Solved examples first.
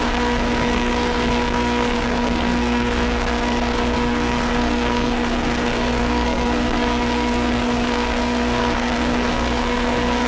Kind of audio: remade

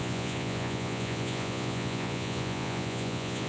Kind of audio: remade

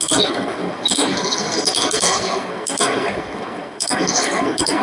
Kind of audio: remade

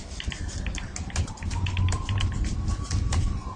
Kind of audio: recorded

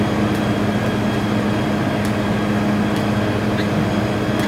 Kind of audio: recorded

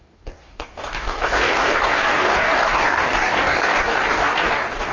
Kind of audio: remade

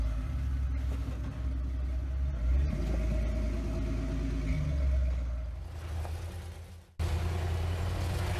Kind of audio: recorded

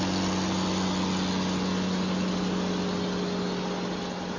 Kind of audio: recorded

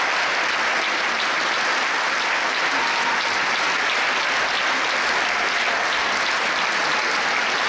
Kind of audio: recorded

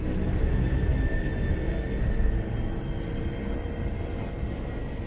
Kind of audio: recorded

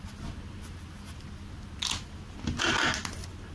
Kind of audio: recorded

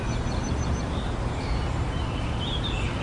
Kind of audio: remade